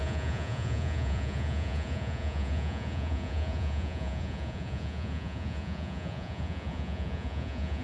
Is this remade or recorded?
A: remade